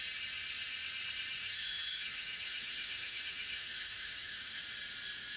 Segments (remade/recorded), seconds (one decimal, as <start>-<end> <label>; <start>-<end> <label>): 0.0-1.4 recorded; 1.4-4.6 remade; 4.6-5.4 recorded